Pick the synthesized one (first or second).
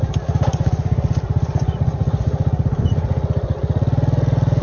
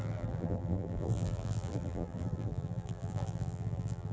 second